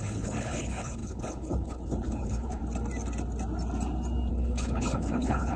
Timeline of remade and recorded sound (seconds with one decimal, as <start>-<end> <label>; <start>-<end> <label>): 0.0-2.6 remade; 2.6-4.3 recorded; 4.3-5.6 remade